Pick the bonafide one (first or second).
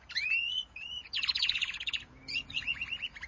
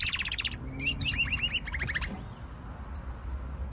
second